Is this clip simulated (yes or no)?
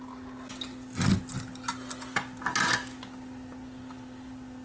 no